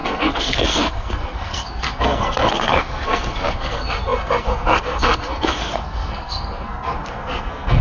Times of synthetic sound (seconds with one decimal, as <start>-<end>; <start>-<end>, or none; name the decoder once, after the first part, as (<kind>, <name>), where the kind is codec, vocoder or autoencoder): 0.0-7.8 (codec, SNAC)